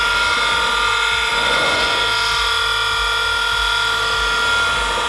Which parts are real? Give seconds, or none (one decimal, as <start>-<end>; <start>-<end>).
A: 0.0-1.3; 2.0-5.1